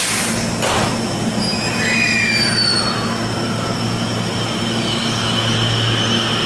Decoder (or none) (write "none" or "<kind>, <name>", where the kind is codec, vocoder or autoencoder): none